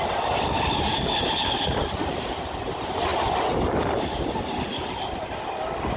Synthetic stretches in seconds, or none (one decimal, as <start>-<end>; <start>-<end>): 0.9-1.5